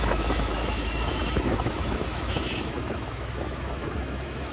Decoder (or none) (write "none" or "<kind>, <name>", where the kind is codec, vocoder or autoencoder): autoencoder, DAC-VAE